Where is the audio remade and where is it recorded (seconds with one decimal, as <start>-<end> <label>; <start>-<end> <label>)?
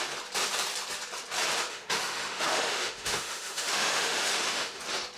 0.0-1.7 recorded; 1.7-4.8 remade; 4.8-5.2 recorded